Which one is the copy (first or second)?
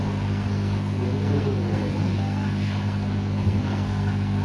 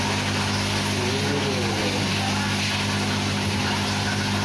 first